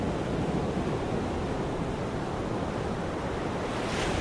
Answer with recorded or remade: recorded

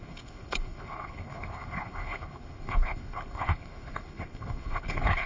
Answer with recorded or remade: remade